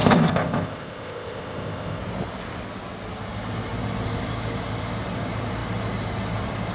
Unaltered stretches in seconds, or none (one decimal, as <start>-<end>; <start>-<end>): 2.0-6.7